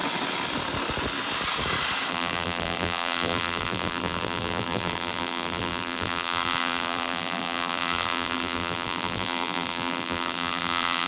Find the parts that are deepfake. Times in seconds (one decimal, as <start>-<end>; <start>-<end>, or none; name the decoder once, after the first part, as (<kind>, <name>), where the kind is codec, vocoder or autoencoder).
2.1-11.1 (vocoder, BigVGAN v2)